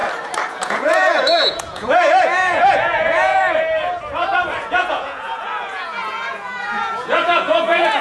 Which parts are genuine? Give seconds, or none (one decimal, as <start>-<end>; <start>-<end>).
0.0-0.5; 3.4-4.7